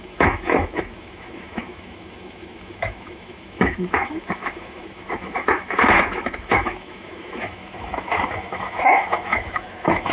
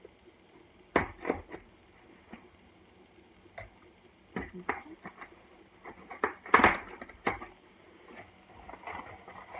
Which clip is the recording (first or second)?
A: second